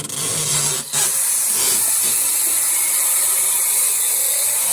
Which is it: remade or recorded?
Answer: recorded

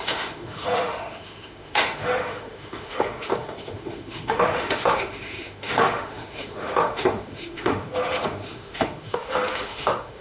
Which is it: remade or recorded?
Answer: remade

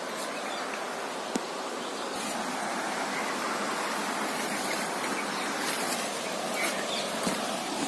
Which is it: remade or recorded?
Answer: recorded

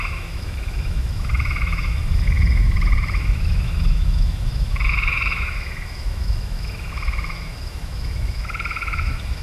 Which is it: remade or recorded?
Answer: remade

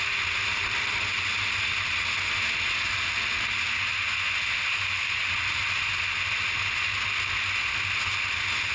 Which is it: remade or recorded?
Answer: recorded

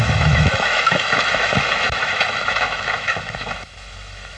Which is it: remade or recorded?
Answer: remade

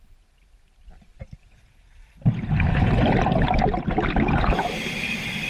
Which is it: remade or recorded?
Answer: recorded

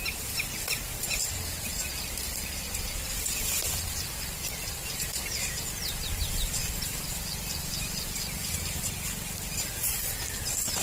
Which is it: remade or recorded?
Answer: recorded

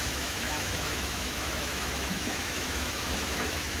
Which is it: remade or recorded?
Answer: remade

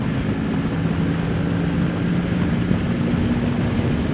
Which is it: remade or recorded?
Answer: recorded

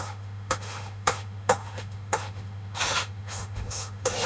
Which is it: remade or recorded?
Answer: remade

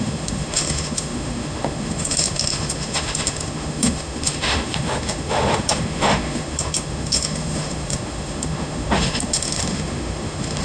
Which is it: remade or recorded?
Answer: remade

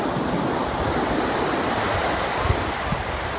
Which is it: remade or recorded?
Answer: recorded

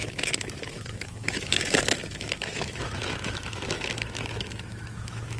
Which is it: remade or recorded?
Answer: remade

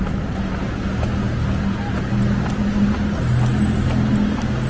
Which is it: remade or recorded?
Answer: recorded